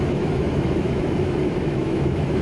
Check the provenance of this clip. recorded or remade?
remade